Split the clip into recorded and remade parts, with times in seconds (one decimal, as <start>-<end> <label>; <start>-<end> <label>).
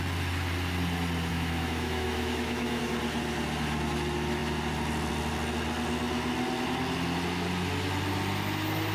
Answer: 0.0-1.3 recorded; 1.3-2.8 remade; 2.8-8.9 recorded